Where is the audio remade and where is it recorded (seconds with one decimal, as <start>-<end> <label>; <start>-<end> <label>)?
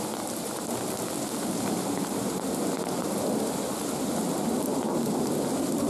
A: 0.0-4.7 remade; 4.7-5.9 recorded